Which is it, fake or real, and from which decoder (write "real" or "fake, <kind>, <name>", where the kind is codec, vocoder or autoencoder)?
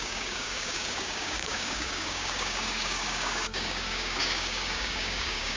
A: fake, codec, DAC